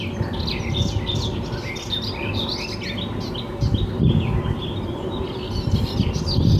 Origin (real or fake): real